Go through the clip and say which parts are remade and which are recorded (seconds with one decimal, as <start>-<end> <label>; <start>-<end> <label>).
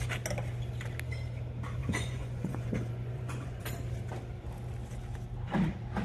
0.0-1.8 recorded; 1.8-3.6 remade; 3.6-6.0 recorded